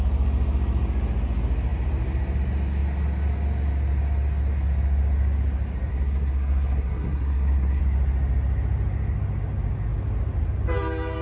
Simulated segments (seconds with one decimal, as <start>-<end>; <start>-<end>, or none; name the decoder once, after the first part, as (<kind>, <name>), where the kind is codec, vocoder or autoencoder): 5.9-7.8 (codec, SNAC)